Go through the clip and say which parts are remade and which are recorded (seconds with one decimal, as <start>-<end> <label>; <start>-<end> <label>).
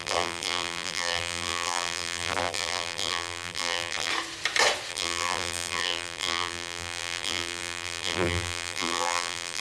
0.0-4.1 remade; 4.1-4.9 recorded; 4.9-9.6 remade